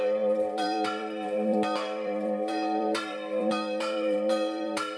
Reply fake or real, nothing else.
fake